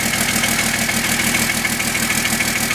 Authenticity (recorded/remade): recorded